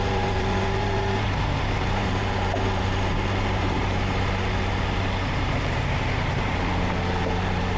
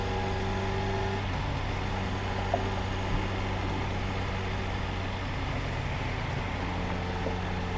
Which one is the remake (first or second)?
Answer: first